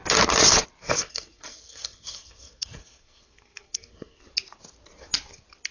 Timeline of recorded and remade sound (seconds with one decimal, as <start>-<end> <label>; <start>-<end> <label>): 0.0-0.8 recorded; 0.8-4.2 remade; 4.2-5.7 recorded